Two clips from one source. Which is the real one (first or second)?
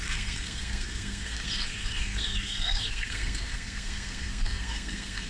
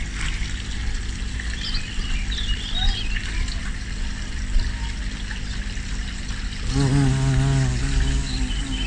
second